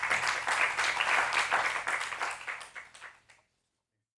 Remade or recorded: recorded